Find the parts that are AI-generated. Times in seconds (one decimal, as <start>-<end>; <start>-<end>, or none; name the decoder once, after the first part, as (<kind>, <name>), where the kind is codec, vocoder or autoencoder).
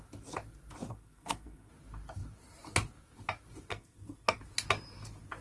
0.9-1.7 (codec, SNAC); 3.7-4.4